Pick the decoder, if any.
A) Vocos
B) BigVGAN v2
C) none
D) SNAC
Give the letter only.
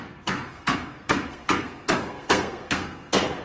D